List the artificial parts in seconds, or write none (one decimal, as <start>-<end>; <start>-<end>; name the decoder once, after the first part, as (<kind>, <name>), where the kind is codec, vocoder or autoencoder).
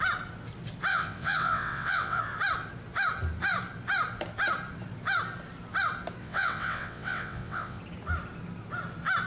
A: 0.9-2.2 (vocoder, WaveNeXt); 6.2-7.8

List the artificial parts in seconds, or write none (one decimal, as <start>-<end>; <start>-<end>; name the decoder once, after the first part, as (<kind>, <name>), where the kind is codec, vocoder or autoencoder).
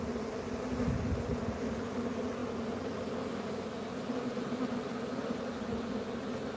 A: none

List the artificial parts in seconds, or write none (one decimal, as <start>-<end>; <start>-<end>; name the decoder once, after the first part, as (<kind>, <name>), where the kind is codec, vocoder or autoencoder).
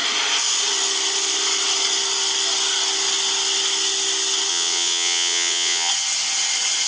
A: 4.5-5.9 (vocoder, WaveNeXt)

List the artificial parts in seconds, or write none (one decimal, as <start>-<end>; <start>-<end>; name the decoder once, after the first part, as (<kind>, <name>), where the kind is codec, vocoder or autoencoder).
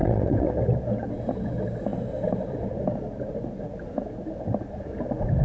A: 0.0-0.5 (vocoder, WaveNeXt)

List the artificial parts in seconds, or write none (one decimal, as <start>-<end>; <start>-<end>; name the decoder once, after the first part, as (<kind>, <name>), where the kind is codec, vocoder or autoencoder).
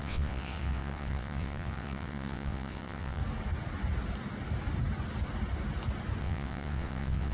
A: 0.0-3.2 (vocoder, WaveNeXt); 6.2-7.3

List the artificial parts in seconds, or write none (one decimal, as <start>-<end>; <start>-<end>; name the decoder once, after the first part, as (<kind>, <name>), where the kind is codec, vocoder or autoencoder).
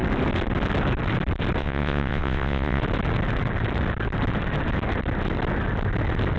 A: 1.6-2.8 (vocoder, WaveNeXt)